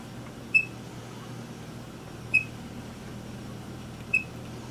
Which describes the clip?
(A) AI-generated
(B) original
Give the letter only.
B